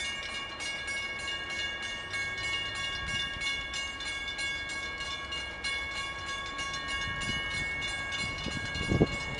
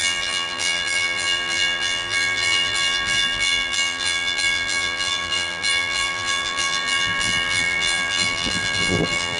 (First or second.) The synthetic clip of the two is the second